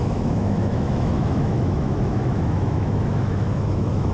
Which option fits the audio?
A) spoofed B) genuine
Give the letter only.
A